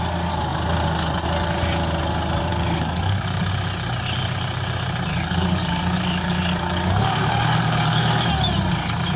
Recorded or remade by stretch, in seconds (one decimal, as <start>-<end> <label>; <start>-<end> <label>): 0.0-2.5 recorded; 2.5-3.5 remade; 3.5-5.1 recorded; 5.1-8.3 remade; 8.3-9.2 recorded